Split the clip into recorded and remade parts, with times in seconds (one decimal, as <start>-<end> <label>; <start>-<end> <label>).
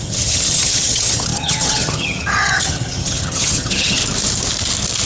0.0-4.0 remade; 4.0-5.1 recorded